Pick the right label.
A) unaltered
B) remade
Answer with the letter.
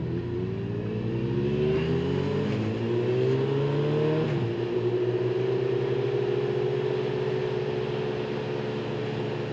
A